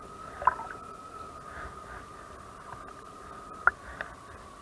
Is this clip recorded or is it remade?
recorded